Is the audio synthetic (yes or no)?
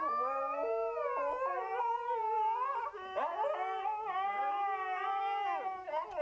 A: no